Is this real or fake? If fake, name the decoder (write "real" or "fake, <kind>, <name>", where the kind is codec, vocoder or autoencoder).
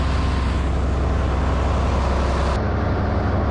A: real